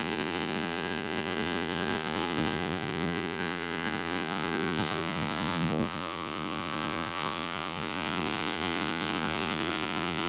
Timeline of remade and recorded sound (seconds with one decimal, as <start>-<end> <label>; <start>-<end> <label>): 0.0-10.3 remade